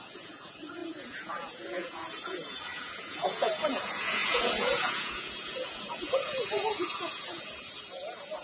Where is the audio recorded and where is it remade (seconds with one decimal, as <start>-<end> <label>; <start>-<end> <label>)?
0.0-8.4 remade